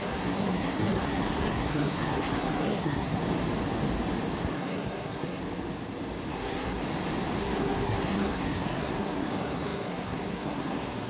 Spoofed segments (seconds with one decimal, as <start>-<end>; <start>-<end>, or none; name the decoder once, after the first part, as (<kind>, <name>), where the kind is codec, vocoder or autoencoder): 0.0-3.2 (codec, SNAC); 4.5-5.4; 6.3-6.8; 7.4-11.1